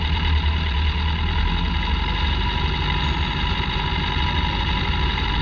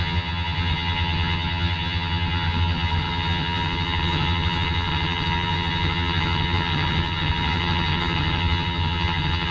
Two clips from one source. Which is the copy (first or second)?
second